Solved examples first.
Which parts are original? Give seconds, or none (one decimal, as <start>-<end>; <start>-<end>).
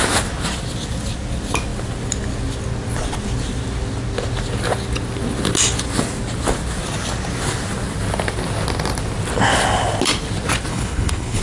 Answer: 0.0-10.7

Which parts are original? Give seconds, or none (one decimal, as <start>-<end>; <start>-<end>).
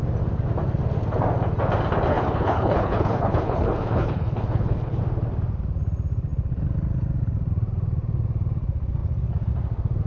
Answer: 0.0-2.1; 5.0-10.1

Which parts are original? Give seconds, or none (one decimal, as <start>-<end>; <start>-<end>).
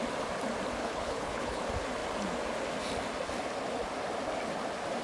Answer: 0.0-0.8; 1.6-5.0